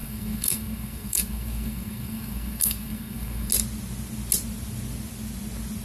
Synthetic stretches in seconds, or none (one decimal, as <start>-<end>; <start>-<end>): 0.0-3.5